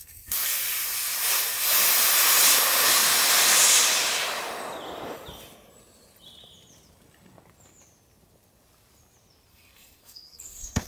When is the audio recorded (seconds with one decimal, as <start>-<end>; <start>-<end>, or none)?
0.6-9.5

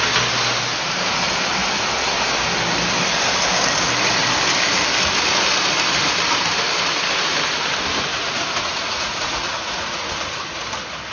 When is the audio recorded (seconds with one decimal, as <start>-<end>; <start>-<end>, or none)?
0.0-8.1; 10.3-11.1

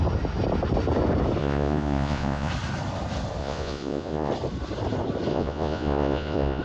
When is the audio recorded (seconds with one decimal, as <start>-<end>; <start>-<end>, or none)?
0.0-1.4; 2.5-3.4; 4.3-5.3

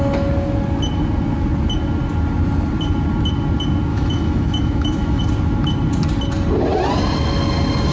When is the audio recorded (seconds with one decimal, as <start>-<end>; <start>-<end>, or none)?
0.0-3.9; 5.2-7.9